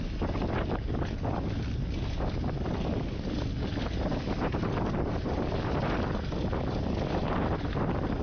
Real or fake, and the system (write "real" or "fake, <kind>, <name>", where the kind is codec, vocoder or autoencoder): real